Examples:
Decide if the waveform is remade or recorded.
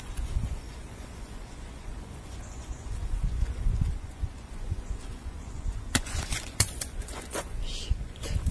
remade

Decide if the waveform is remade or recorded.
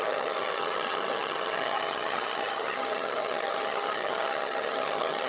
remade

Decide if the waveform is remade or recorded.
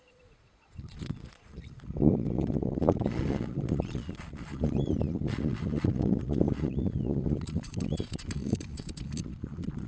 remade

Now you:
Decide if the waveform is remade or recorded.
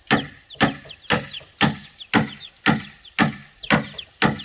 recorded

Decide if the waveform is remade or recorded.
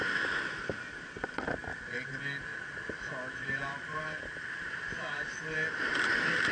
recorded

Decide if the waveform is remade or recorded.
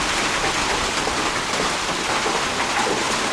recorded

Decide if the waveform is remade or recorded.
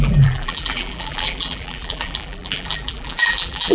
remade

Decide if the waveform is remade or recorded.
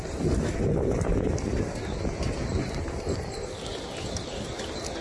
recorded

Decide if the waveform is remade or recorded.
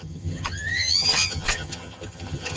remade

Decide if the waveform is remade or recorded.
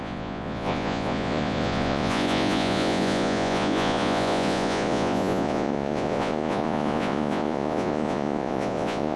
remade